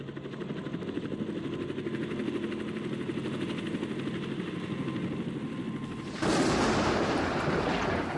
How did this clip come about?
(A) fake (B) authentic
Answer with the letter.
B